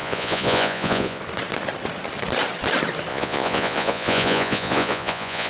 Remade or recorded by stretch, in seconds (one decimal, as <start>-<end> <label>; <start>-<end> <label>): 0.0-1.2 remade; 1.2-3.1 recorded; 3.1-5.5 remade

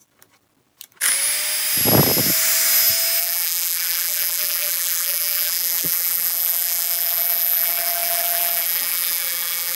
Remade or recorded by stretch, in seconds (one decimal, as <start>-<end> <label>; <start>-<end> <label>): 0.0-3.2 recorded; 3.2-9.8 remade

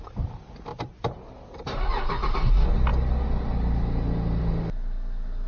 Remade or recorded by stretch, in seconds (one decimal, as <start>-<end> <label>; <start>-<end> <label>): 0.0-0.7 recorded; 0.7-1.9 remade; 1.9-5.5 recorded

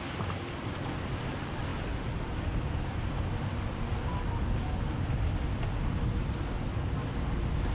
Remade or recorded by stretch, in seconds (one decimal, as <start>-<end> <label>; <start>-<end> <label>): 0.0-7.7 recorded

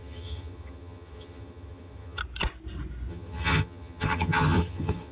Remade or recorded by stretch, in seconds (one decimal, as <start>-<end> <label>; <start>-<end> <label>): 0.0-2.2 remade; 2.2-3.1 recorded; 3.1-5.1 remade

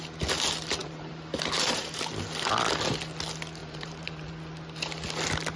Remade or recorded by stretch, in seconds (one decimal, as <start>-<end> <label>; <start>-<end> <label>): 0.0-0.8 recorded; 0.8-2.0 remade; 2.0-3.6 recorded; 3.6-4.3 remade; 4.3-5.6 recorded

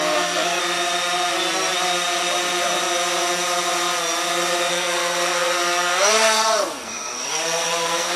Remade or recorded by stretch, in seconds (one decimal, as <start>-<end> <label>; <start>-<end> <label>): 0.0-0.6 remade; 0.6-4.7 recorded; 4.7-8.2 remade

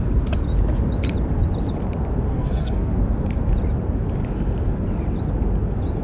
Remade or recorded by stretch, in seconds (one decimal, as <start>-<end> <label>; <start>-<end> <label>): 0.0-2.3 recorded; 2.3-2.9 remade; 2.9-6.0 recorded